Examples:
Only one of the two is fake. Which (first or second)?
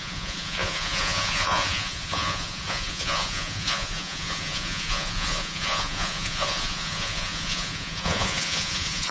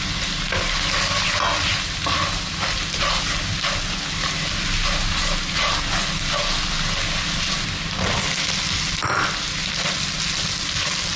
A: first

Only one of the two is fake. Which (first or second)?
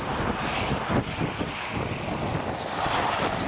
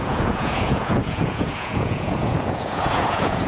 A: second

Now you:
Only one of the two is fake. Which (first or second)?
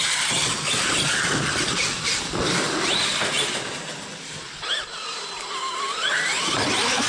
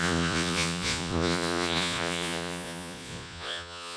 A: second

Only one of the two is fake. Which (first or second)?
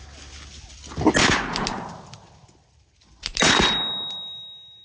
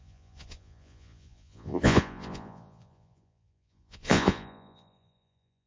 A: second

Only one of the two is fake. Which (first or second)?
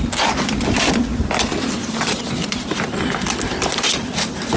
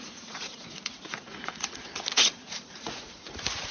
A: second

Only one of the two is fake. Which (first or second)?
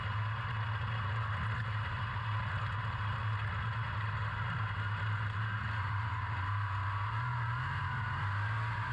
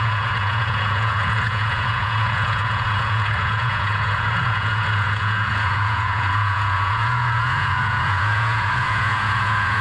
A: second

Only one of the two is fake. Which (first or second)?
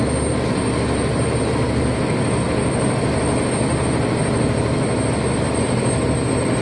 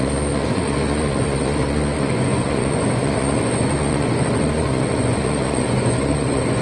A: second